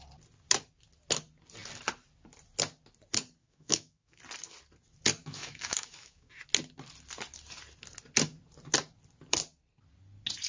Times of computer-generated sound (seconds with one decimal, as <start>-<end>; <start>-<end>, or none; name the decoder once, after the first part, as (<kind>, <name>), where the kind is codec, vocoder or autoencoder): 3.4-4.2 (autoencoder, DAC-VAE); 5.2-6.3